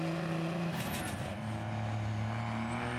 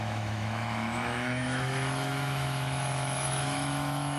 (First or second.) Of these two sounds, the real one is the first